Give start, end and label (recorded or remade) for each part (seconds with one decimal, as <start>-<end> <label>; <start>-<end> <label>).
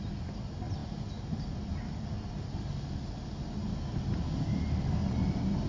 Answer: 0.0-5.7 recorded